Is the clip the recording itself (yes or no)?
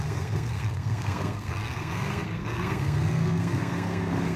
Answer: no